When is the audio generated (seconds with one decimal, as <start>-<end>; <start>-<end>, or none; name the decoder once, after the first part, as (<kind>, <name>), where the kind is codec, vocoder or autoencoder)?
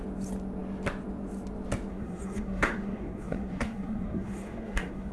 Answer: 1.9-5.1 (codec, SNAC)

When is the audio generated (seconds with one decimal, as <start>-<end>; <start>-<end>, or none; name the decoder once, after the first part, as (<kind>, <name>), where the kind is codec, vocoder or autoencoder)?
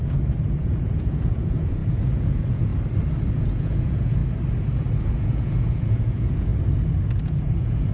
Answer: 0.0-2.7 (vocoder, Vocos); 3.3-4.2; 5.0-6.5; 7.2-7.9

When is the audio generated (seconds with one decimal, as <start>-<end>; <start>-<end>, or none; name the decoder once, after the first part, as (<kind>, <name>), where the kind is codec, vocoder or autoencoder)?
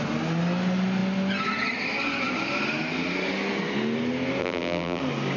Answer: 4.4-5.0 (vocoder, BigVGAN v2)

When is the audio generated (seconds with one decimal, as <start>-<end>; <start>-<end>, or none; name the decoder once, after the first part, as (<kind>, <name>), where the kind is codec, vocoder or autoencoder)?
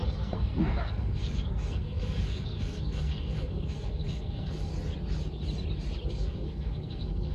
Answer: 0.0-4.7 (codec, SNAC); 6.1-7.3